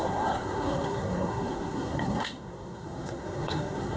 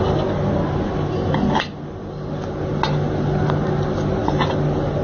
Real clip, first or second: second